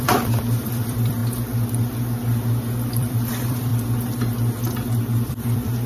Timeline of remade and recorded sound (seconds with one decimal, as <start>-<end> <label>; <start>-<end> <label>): 0.0-1.2 remade; 1.2-2.9 recorded; 2.9-3.7 remade; 3.7-5.3 recorded; 5.3-5.9 remade